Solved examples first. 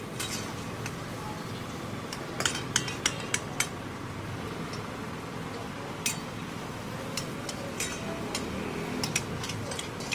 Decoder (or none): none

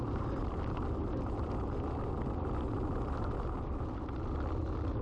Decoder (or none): none